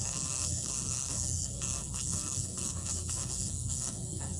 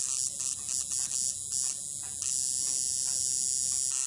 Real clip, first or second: second